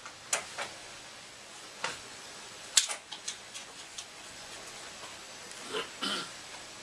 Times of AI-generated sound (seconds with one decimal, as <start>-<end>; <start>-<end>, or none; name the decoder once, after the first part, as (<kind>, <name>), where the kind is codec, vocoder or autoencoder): 0.8-4.9 (vocoder, Vocos)